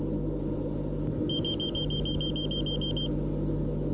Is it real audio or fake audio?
real